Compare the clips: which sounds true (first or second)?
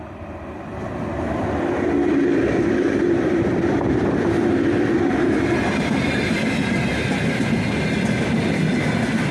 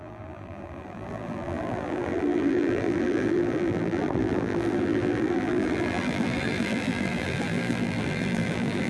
first